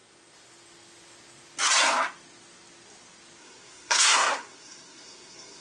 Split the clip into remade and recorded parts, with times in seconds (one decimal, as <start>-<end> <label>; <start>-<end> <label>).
0.0-3.4 recorded; 3.4-5.6 remade